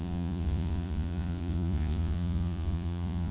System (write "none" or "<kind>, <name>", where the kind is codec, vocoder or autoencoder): vocoder, Vocos